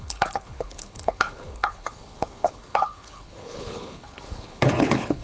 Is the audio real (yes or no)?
no